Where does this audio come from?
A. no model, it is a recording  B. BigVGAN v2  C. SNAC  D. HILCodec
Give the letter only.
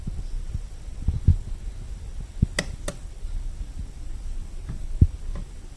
A